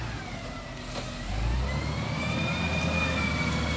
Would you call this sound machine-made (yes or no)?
no